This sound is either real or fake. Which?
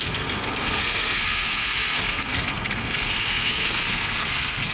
fake